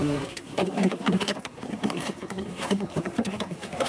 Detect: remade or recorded remade